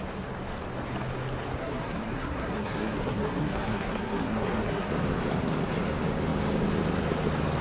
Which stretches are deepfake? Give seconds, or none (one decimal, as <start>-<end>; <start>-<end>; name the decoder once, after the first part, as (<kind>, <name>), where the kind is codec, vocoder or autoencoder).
1.6-4.9 (codec, SNAC)